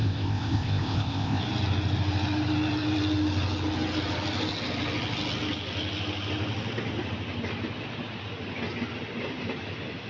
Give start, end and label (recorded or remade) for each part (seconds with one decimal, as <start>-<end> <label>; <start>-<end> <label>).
0.0-1.4 remade; 1.4-10.1 recorded